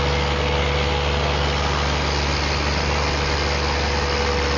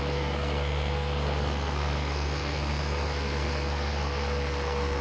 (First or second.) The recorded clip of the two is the first